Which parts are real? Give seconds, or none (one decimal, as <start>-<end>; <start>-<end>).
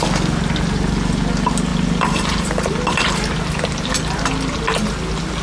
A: 0.0-5.4